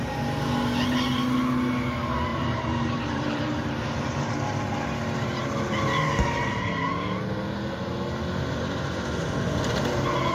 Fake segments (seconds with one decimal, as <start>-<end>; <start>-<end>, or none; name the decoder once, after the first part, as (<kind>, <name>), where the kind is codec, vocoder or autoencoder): 2.3-4.3 (vocoder, BigVGAN v2)